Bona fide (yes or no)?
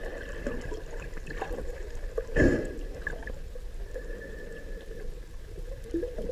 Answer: no